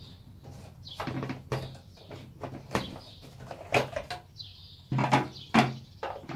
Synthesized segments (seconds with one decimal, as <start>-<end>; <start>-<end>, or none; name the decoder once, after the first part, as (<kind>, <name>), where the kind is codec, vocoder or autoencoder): none